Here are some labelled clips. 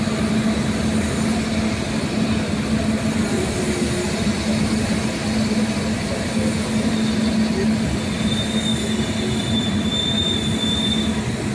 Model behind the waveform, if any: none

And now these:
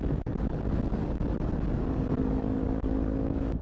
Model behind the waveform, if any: codec, DAC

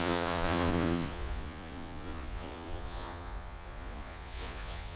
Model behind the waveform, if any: vocoder, Vocos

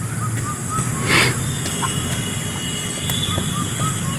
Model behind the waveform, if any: none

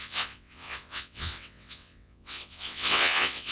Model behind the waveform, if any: vocoder, WaveNeXt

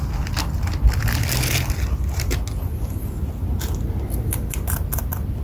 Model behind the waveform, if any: none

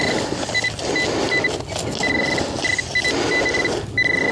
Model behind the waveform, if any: none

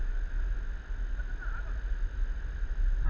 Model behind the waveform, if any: none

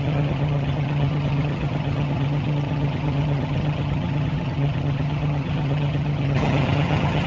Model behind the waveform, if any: vocoder, HiFi-GAN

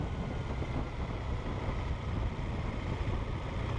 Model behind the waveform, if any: none